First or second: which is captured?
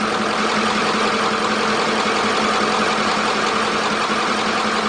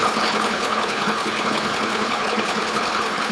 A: first